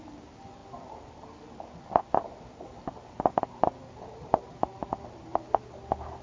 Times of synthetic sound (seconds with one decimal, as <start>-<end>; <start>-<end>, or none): none